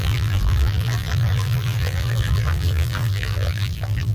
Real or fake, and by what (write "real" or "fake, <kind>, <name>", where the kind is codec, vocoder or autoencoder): fake, vocoder, BigVGAN v2